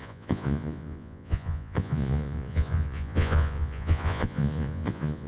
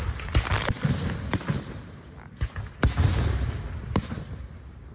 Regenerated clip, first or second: first